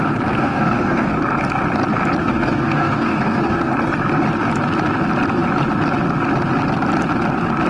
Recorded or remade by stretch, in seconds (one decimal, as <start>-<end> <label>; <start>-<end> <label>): 0.0-0.4 recorded; 0.4-1.2 remade; 1.2-2.2 recorded; 2.2-3.7 remade; 3.7-7.7 recorded